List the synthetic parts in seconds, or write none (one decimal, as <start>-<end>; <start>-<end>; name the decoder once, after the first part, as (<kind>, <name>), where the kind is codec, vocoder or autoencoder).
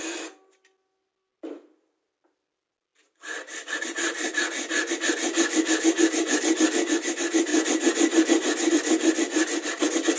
none